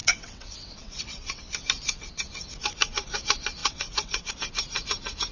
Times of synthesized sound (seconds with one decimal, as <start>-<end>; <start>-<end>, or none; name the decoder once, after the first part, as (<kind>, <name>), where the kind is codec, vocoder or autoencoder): 0.0-1.4 (vocoder, WaveNeXt); 3.6-4.3